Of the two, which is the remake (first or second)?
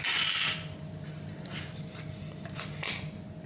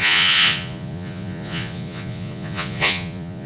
second